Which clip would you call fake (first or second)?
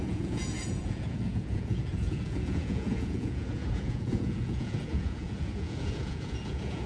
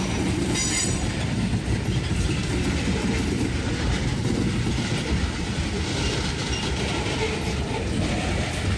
first